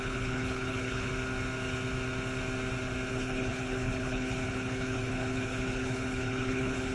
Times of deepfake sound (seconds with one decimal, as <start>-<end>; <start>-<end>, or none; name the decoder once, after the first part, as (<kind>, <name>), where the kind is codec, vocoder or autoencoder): 0.0-1.1 (codec, HILCodec); 3.1-6.9